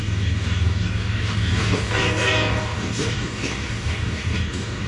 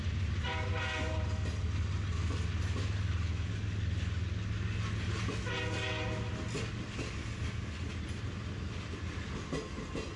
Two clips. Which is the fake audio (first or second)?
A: first